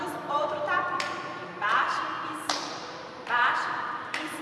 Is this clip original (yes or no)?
no